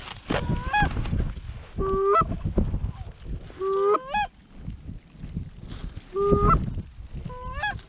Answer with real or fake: real